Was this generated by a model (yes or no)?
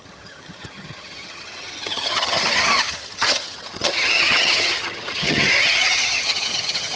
yes